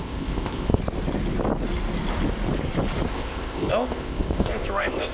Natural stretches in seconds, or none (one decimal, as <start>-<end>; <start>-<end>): 0.8-3.1

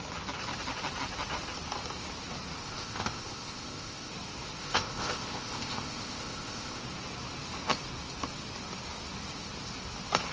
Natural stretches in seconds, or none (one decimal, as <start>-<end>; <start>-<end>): 0.0-2.6; 4.1-4.6; 6.8-10.3

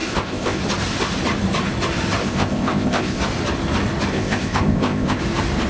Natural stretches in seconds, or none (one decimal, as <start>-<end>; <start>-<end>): 0.6-2.2; 3.2-4.1; 5.2-5.7

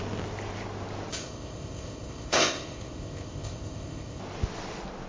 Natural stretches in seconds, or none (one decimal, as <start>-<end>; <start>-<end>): 0.0-1.1; 4.2-5.1

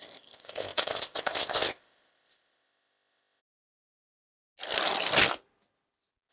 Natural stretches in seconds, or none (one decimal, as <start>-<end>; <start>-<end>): 3.4-6.3